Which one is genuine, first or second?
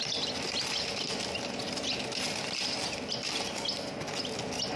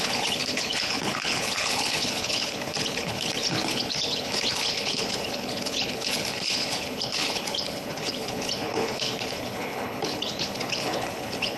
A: first